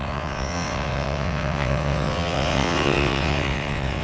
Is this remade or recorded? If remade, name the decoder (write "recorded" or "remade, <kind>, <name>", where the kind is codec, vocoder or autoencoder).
remade, vocoder, WaveNeXt